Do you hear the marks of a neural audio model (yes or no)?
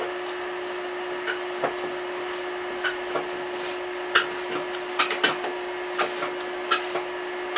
no